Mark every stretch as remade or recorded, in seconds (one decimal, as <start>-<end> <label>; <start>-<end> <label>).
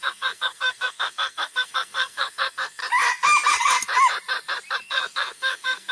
0.0-2.8 remade; 2.8-4.8 recorded; 4.8-5.9 remade